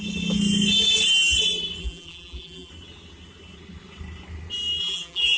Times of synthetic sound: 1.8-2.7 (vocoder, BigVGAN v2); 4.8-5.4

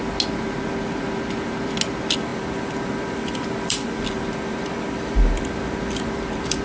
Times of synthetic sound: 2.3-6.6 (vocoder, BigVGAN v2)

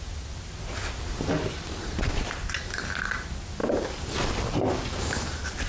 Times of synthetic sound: 3.6-5.7 (vocoder, BigVGAN v2)

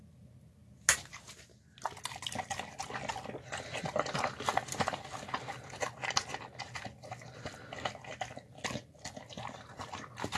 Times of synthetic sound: none